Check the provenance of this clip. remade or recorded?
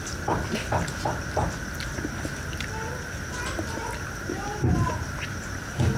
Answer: recorded